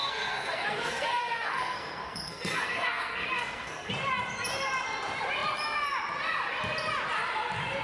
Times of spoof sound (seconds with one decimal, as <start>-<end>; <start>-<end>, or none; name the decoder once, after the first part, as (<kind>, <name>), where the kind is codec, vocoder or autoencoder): 0.0-3.9 (codec, SNAC)